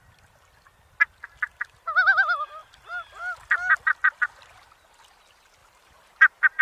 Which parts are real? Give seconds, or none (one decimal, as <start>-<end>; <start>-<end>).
0.0-5.6